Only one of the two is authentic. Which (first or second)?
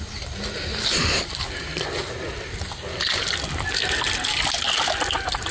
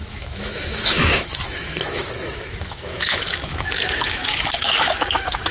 first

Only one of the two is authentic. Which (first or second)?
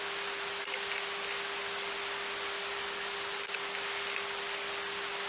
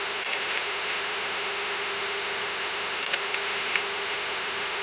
first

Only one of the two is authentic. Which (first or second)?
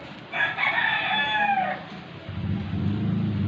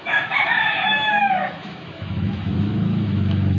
first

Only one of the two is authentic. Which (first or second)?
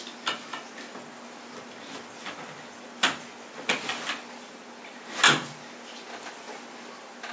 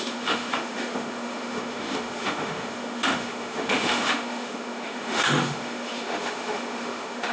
first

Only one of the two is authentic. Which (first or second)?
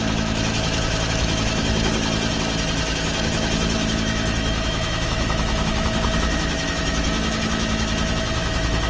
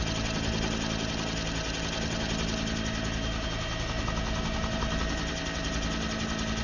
second